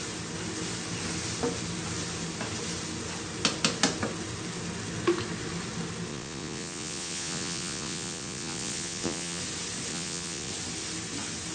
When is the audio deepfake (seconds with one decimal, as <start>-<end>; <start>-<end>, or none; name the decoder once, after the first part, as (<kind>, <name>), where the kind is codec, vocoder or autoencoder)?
6.1-9.4 (vocoder, Vocos); 9.9-10.5